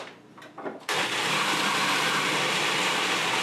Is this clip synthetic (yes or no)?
yes